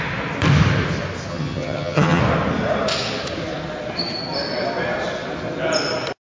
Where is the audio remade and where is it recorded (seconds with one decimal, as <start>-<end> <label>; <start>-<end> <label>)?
0.0-1.3 recorded; 1.3-2.2 remade; 2.2-6.3 recorded